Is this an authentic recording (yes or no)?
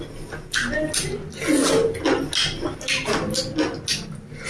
yes